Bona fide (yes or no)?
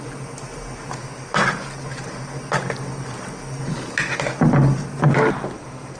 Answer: yes